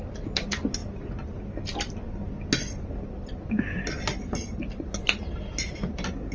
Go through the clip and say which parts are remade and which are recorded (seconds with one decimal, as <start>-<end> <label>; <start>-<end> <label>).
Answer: 0.0-6.3 recorded